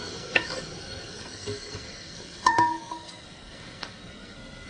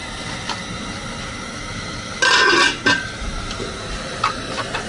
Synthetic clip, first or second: first